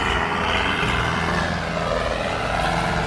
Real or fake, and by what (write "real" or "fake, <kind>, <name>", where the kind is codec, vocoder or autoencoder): real